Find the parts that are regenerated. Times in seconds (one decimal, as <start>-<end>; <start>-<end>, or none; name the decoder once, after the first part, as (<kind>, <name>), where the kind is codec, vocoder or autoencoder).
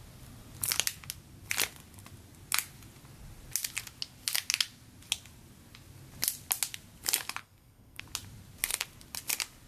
7.4-8.0 (codec, SNAC)